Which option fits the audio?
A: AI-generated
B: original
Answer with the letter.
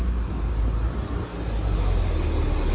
B